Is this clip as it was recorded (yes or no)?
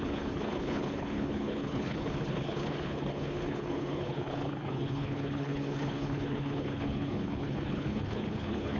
no